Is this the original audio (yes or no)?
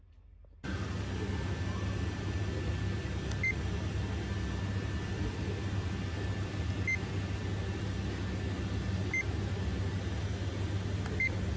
yes